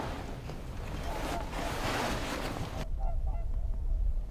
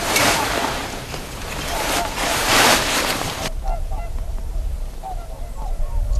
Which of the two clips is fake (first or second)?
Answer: second